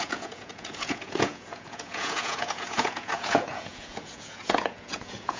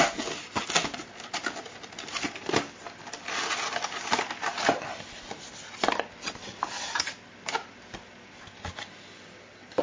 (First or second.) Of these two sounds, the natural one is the second